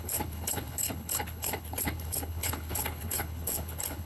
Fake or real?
fake